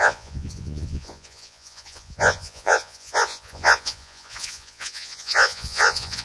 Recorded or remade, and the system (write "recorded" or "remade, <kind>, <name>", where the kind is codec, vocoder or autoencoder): remade, vocoder, Vocos